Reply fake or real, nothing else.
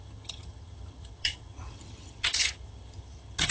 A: fake